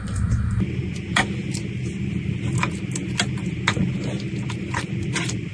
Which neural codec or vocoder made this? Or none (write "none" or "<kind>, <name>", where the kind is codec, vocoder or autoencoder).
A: none